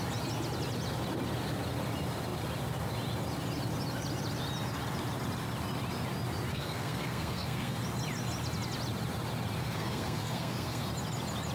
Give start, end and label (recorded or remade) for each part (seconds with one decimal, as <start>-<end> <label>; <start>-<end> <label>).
0.0-6.5 recorded; 6.5-7.8 remade; 7.8-9.6 recorded; 9.6-10.9 remade; 10.9-11.5 recorded